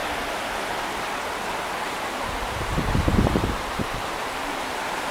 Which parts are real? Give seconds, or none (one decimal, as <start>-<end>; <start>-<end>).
0.0-1.9